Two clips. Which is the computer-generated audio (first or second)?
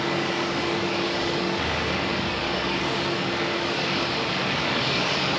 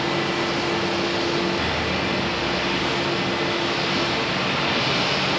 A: first